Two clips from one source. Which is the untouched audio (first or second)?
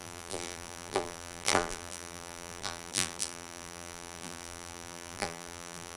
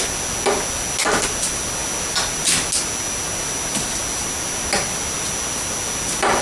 second